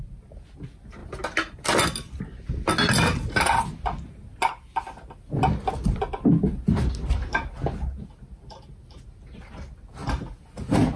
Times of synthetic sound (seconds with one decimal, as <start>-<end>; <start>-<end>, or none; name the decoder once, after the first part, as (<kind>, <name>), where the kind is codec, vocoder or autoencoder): none